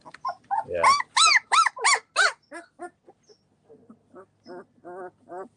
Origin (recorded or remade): recorded